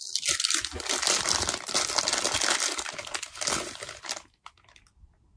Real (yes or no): yes